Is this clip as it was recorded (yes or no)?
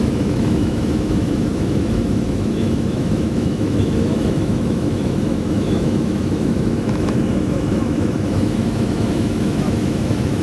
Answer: no